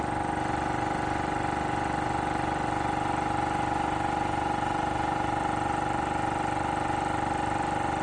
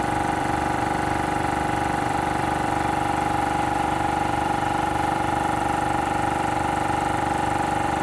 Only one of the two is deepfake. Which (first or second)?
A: second